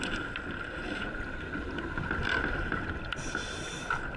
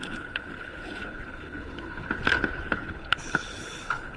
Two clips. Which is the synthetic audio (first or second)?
second